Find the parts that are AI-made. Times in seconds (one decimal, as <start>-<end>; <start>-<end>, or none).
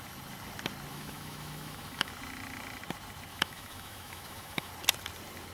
0.9-2.1; 3.3-4.7